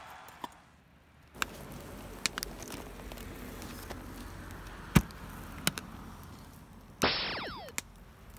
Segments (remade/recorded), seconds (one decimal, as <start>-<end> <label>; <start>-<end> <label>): 0.0-8.4 recorded